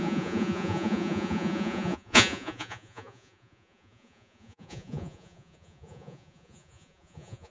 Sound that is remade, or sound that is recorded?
remade